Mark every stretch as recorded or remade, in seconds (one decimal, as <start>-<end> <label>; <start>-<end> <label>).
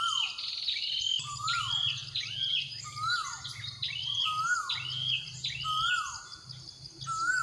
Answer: 0.0-7.4 recorded